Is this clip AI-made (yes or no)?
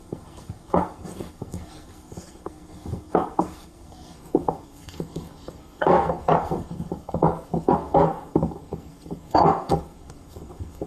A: yes